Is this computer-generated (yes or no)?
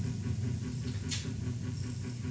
no